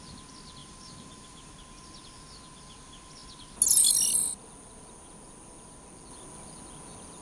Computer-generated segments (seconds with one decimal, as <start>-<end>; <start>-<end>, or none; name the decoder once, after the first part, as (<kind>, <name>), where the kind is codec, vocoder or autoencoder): 0.6-1.5 (vocoder, BigVGAN v2)